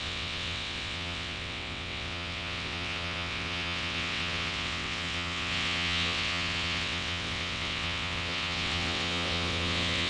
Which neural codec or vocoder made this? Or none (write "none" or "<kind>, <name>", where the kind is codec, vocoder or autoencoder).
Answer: vocoder, WaveNeXt